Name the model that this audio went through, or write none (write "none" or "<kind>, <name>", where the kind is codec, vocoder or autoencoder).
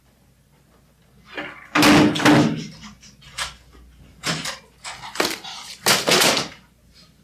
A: none